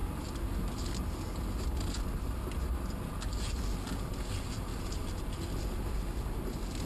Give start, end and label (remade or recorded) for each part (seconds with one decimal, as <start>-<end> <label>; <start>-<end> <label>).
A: 0.0-6.9 recorded